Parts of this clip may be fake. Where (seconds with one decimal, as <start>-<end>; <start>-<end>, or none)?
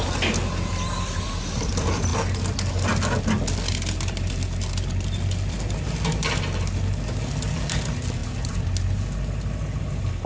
none